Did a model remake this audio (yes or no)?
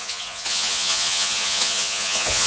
yes